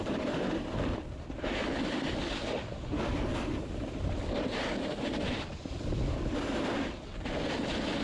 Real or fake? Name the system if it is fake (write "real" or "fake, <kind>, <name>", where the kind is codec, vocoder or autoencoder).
real